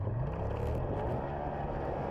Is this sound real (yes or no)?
yes